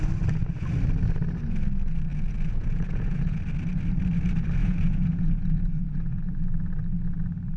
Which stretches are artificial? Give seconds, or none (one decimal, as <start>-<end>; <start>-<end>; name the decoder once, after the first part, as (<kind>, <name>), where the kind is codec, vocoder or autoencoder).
2.1-3.4 (vocoder, Vocos); 4.6-6.2